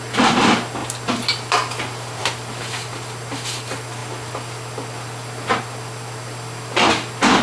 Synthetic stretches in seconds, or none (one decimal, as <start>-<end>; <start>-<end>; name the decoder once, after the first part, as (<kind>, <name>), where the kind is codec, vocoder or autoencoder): none